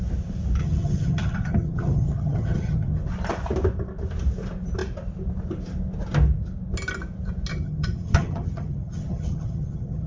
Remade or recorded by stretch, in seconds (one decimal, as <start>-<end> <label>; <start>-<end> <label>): 0.0-0.6 recorded; 0.6-3.0 remade; 3.0-7.5 recorded; 7.5-10.1 remade